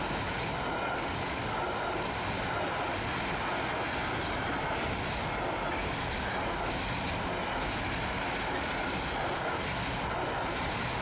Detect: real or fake real